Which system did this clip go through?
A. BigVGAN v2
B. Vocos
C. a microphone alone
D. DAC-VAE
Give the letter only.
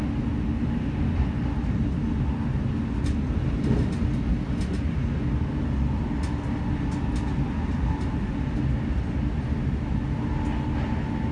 C